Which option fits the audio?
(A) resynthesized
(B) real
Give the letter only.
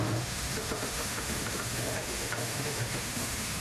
A